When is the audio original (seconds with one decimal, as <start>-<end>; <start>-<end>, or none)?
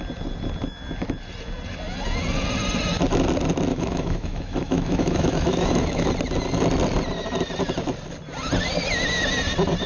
0.0-3.7; 6.1-9.9